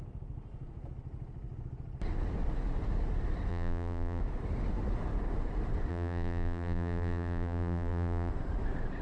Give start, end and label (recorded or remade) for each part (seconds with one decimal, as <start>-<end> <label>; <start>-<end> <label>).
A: 0.0-3.5 recorded; 3.5-4.2 remade; 4.2-5.9 recorded; 5.9-8.3 remade; 8.3-9.0 recorded